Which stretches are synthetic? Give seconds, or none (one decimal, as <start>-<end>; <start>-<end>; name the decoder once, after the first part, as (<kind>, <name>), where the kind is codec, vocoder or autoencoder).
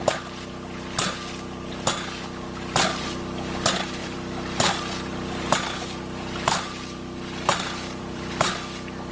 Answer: 4.0-8.3 (vocoder, BigVGAN v2)